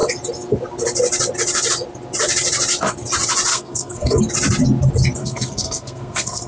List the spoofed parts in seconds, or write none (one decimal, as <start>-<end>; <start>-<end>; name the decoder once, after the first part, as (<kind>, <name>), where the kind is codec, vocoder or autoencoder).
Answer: 3.5-4.2 (codec, SNAC); 5.2-6.5